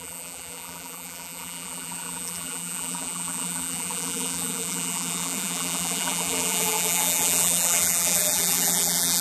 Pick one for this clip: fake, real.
fake